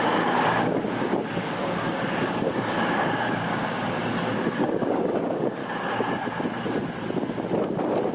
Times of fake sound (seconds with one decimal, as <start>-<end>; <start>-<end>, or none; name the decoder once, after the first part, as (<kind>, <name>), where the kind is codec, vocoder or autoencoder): 0.0-5.6 (codec, DAC)